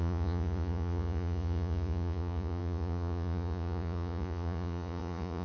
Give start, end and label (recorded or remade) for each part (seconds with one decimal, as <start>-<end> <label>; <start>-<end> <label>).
0.0-5.4 remade